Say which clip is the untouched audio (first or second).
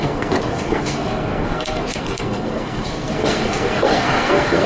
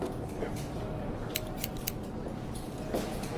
second